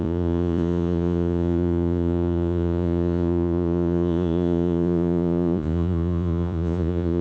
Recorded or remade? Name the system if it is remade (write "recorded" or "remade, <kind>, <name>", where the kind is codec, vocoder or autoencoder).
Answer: remade, vocoder, Vocos